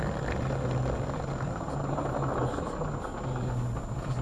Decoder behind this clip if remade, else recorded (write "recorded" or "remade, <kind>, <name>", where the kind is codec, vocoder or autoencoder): recorded